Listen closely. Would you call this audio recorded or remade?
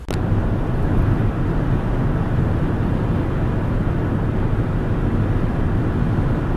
recorded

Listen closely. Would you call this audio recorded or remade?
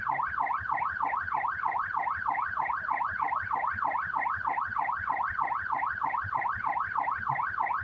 recorded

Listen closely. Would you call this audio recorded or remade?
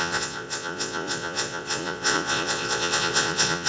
remade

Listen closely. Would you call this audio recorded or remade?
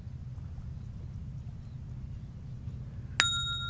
recorded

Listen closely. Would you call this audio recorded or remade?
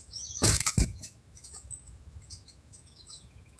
remade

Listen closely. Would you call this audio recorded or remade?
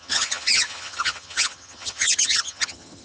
remade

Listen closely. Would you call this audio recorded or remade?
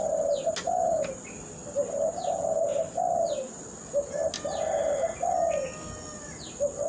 recorded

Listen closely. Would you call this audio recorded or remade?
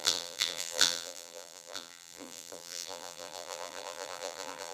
remade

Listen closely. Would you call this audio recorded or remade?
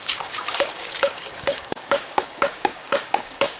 remade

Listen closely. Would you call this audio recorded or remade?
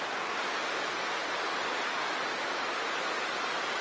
recorded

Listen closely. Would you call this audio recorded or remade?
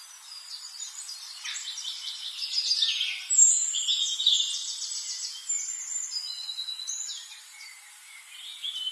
remade